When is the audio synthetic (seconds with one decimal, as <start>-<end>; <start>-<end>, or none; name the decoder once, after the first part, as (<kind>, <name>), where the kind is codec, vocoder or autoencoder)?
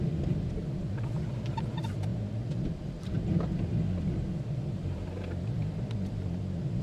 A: none